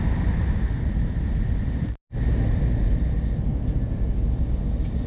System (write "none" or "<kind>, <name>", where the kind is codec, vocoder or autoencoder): none